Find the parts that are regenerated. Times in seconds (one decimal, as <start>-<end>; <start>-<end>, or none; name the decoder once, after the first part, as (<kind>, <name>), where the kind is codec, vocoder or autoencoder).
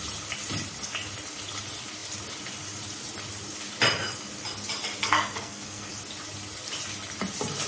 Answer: 5.0-5.9 (codec, SNAC)